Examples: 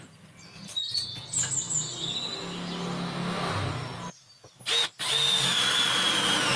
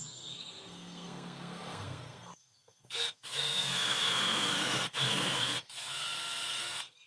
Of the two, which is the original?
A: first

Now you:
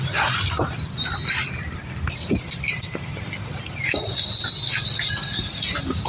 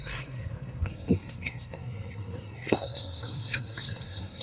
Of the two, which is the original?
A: first